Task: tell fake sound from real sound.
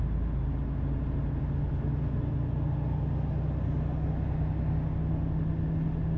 real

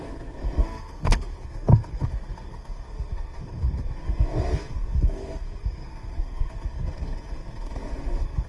fake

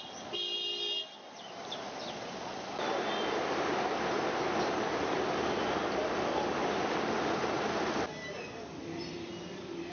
real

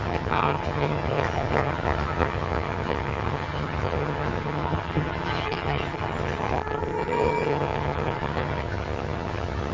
fake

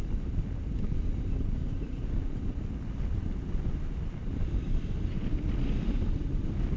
real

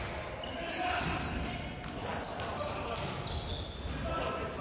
real